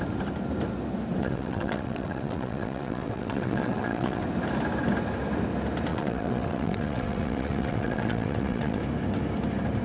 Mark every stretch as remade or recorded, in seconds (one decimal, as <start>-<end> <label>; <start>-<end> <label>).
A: 0.0-1.2 recorded; 1.2-4.2 remade; 4.2-5.9 recorded; 5.9-8.8 remade; 8.8-9.8 recorded